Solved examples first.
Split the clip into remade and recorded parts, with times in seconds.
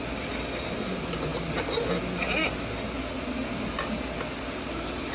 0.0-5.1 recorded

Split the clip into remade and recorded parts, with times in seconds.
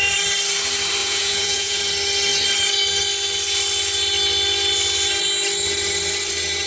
0.0-1.0 recorded; 1.0-1.8 remade; 1.8-6.7 recorded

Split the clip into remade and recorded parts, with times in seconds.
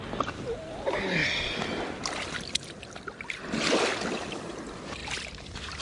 0.0-5.8 recorded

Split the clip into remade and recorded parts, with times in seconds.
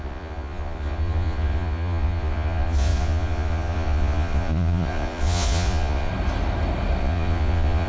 0.0-6.1 remade; 6.1-7.0 recorded; 7.0-7.9 remade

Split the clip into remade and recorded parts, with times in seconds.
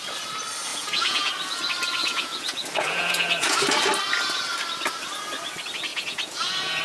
0.0-0.7 recorded; 0.7-1.3 remade; 1.3-2.0 recorded; 2.0-3.6 remade; 3.6-5.9 recorded; 5.9-6.8 remade